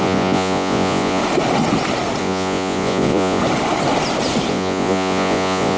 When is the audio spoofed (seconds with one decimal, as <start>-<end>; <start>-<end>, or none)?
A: 0.0-1.2; 2.2-3.4; 4.5-5.8